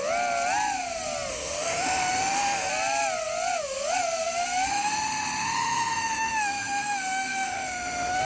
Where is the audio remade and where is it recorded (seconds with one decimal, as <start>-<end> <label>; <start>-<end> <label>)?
0.0-1.3 recorded; 1.3-2.7 remade; 2.7-4.7 recorded; 4.7-8.2 remade